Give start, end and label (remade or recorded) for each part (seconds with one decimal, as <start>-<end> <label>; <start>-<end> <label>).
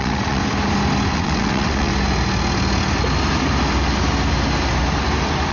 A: 0.0-0.4 remade; 0.4-1.1 recorded; 1.1-1.9 remade; 1.9-5.5 recorded